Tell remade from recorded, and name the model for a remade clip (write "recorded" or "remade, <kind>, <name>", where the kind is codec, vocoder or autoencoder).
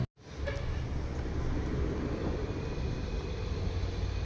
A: recorded